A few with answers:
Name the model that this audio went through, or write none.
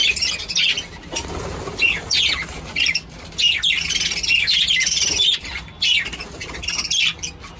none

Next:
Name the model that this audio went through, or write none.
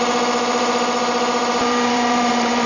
vocoder, BigVGAN v2